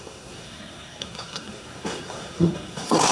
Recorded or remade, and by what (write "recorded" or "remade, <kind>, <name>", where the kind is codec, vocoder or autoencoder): remade, codec, SNAC